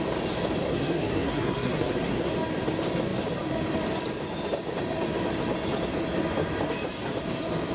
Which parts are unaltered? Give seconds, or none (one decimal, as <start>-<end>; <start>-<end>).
0.0-0.7; 2.3-7.7